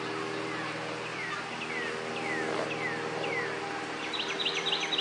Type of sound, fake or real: real